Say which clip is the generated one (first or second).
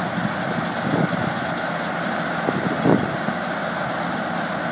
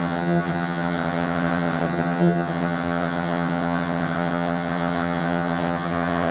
second